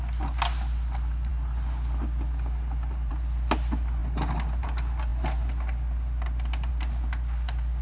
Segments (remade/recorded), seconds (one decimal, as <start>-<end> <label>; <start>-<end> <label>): 0.0-7.8 recorded